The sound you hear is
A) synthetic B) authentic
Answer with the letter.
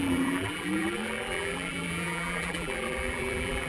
A